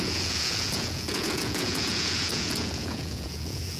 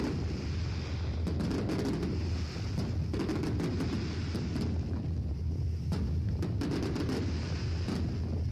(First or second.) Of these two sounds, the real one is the second